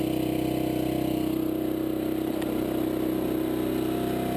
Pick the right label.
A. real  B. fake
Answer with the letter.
B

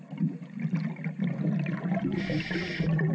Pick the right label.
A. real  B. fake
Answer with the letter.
A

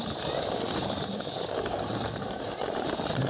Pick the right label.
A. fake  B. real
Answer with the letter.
A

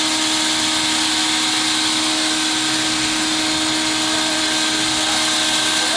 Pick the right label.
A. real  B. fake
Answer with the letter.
A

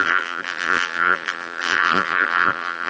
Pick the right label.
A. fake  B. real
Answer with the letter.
A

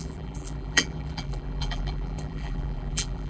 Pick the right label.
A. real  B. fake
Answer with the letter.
B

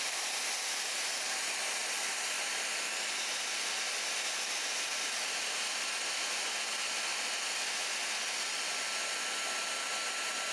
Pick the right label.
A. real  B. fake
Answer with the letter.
A